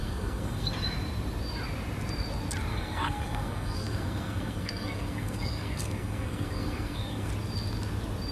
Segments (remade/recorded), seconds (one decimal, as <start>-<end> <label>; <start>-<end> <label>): 0.0-0.7 remade; 0.7-2.7 recorded; 2.7-7.3 remade; 7.3-8.3 recorded